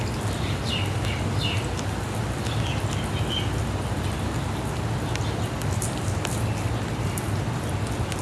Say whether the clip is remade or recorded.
recorded